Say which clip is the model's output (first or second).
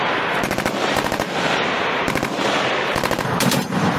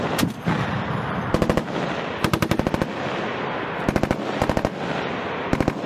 first